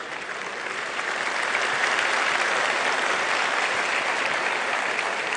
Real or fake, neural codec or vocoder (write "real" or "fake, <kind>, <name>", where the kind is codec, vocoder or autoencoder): fake, vocoder, BigVGAN v2